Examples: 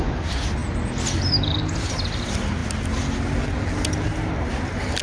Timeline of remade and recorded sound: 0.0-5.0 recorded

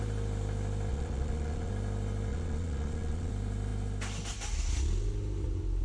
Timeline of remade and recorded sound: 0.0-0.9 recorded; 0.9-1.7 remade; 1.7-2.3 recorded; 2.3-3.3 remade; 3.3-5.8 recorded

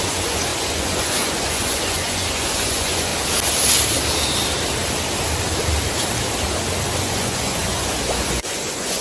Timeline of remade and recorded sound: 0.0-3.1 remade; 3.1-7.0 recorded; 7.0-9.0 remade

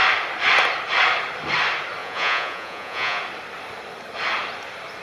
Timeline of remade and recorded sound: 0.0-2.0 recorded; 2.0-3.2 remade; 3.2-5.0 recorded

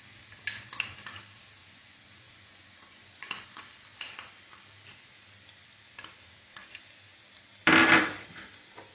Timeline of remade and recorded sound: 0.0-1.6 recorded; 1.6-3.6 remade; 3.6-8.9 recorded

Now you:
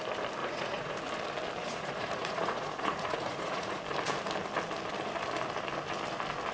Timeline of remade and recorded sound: 0.0-0.4 recorded; 0.4-0.9 remade; 0.9-1.6 recorded; 1.6-3.8 remade; 3.8-6.5 recorded

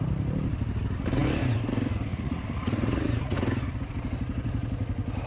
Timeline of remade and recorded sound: 0.0-2.1 recorded; 2.1-3.4 remade; 3.4-5.3 recorded